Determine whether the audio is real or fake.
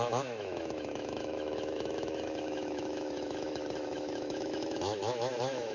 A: fake